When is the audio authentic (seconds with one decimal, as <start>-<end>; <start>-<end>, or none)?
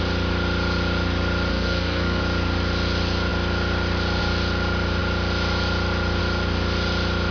0.0-1.5; 2.2-7.3